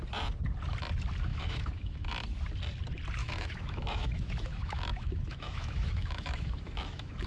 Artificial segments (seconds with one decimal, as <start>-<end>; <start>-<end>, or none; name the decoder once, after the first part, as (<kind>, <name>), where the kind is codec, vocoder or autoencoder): 1.3-2.1 (autoencoder, DAC-VAE); 3.2-7.3